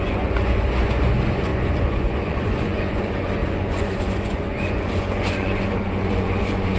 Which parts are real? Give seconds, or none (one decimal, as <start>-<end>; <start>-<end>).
none